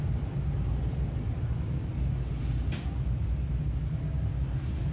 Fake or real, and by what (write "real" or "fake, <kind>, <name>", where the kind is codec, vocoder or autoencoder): real